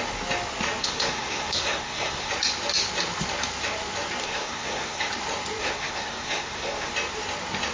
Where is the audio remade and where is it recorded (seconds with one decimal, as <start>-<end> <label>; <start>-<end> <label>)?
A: 0.0-0.8 recorded; 0.8-2.3 remade; 2.3-4.2 recorded; 4.2-5.1 remade; 5.1-5.6 recorded; 5.6-6.9 remade; 6.9-7.7 recorded